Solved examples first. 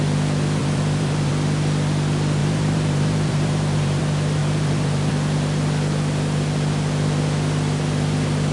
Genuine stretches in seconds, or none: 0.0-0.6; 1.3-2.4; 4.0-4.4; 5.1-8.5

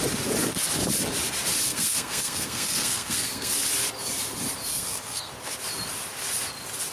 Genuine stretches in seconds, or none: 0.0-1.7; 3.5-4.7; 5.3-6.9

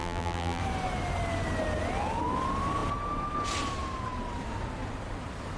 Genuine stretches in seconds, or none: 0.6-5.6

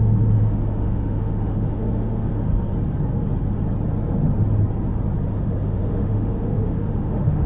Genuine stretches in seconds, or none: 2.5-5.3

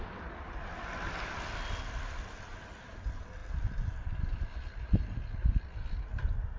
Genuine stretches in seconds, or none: 0.0-6.6

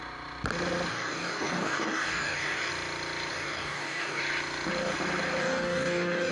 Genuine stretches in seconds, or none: 0.0-0.9; 2.7-3.3; 4.2-5.4

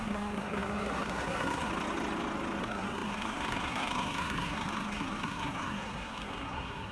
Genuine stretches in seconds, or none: 1.7-2.6